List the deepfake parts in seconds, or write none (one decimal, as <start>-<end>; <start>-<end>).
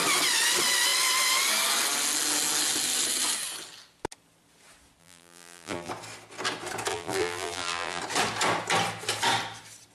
5.0-5.9; 6.9-8.0